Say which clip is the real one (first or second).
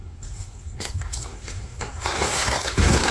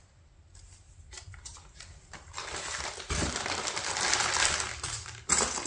second